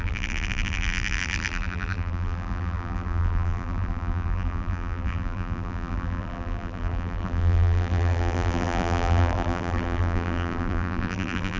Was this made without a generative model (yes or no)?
no